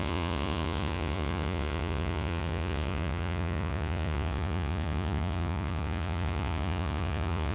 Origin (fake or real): fake